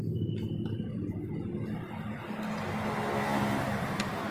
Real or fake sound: real